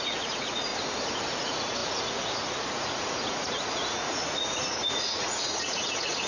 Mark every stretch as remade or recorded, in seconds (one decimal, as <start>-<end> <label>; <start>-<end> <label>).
0.0-0.7 remade; 0.7-1.4 recorded; 1.4-6.3 remade